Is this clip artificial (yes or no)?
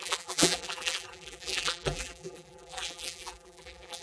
yes